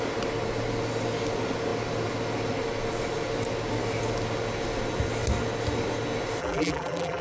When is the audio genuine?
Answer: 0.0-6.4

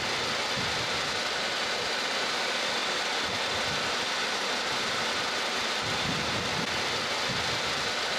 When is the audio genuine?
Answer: 6.5-8.2

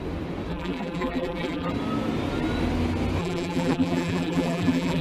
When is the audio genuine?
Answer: 0.0-0.5; 1.7-3.2